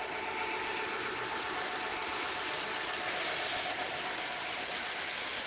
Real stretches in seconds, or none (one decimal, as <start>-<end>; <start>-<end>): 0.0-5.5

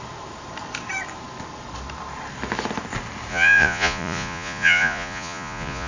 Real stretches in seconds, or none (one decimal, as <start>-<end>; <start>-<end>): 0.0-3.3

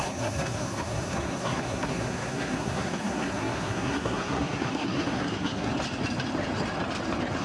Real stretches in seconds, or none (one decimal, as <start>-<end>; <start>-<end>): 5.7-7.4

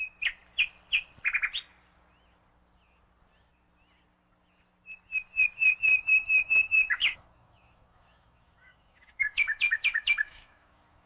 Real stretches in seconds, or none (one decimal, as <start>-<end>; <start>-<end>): 0.0-5.9

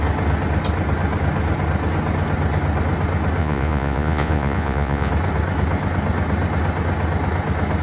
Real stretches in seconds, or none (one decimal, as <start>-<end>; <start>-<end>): 0.0-3.4; 5.1-7.8